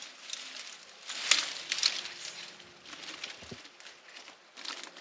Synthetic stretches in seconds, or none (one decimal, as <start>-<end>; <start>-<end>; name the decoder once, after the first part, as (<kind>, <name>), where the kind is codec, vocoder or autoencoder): none